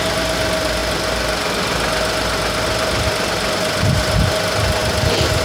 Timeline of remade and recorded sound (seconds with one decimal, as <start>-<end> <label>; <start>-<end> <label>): 0.0-5.4 recorded